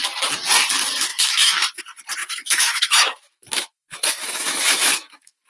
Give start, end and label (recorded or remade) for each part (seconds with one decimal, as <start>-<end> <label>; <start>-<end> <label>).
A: 0.0-1.1 recorded; 1.1-1.8 remade; 1.8-2.2 recorded; 2.2-5.5 remade